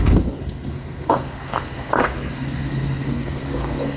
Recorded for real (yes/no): no